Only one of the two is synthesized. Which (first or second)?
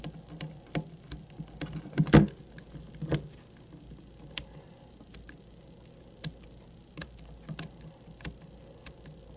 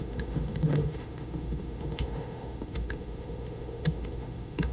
second